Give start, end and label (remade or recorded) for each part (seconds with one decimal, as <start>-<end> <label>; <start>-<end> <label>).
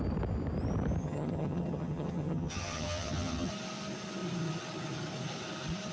0.0-1.0 recorded; 1.0-3.5 remade; 3.5-5.9 recorded